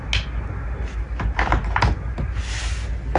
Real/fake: real